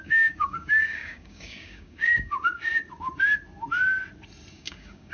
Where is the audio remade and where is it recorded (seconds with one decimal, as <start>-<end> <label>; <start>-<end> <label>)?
0.0-2.6 remade; 2.6-4.5 recorded; 4.5-5.1 remade